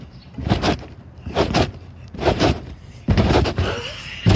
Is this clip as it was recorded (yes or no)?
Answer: no